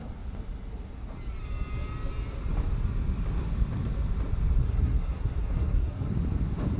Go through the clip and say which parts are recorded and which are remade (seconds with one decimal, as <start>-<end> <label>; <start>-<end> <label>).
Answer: 0.0-4.6 recorded; 4.6-6.1 remade; 6.1-6.8 recorded